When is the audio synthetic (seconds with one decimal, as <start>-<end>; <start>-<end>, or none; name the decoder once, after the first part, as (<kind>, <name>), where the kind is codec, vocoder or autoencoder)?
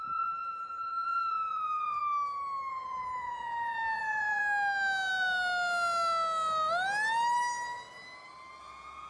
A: 0.0-2.0 (vocoder, Vocos); 2.7-4.4; 8.6-9.1